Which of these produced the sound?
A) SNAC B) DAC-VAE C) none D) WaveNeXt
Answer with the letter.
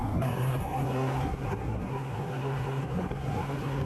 A